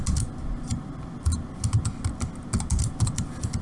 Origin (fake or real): real